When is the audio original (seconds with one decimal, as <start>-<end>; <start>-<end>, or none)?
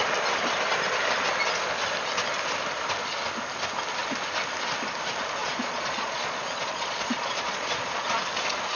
0.0-5.4; 8.2-8.8